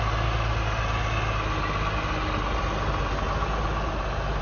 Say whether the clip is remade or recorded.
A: recorded